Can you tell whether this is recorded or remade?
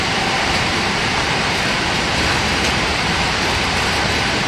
remade